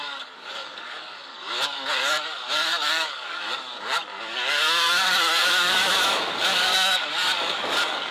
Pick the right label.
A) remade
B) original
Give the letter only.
A